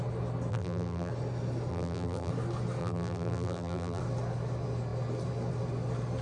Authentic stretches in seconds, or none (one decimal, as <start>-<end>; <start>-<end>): 0.0-0.5; 1.1-1.7; 2.3-2.8; 4.0-6.2